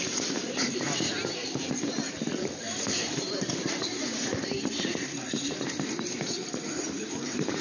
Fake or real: fake